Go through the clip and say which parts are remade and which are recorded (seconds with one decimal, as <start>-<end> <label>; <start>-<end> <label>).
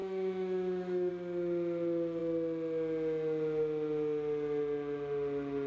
0.0-1.1 remade; 1.1-5.7 recorded